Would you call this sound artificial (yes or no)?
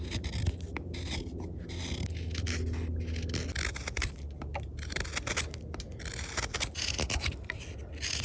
no